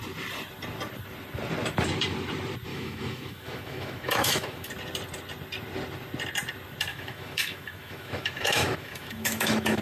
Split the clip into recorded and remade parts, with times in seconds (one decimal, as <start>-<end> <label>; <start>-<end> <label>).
0.0-2.7 recorded; 2.7-4.7 remade; 4.7-6.9 recorded; 6.9-9.8 remade